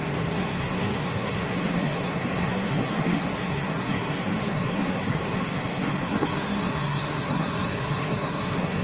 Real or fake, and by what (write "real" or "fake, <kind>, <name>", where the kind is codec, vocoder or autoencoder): fake, codec, SNAC